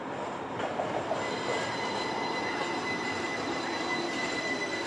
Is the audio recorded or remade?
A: remade